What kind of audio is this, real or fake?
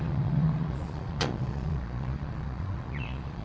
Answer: fake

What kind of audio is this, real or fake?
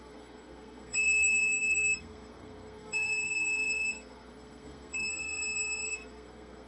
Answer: fake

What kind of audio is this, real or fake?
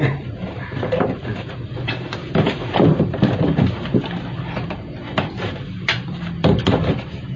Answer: fake